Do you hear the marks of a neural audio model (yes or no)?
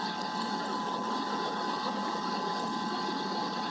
no